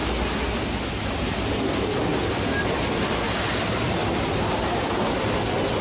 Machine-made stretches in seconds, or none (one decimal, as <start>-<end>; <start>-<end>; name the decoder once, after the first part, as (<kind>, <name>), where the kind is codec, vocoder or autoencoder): 0.0-1.5 (vocoder, BigVGAN v2); 2.1-2.6